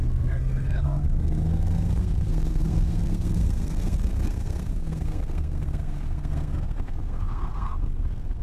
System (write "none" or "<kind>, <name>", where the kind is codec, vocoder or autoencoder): codec, SNAC